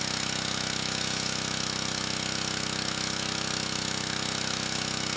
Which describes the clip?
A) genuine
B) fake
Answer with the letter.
B